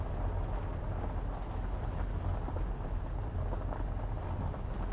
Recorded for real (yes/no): yes